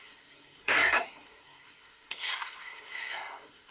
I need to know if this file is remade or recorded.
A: remade